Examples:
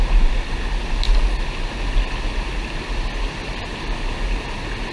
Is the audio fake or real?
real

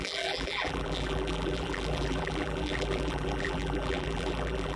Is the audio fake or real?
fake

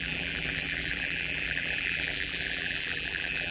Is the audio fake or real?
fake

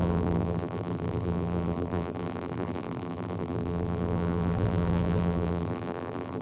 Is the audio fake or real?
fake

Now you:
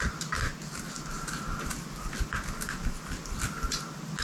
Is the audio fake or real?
real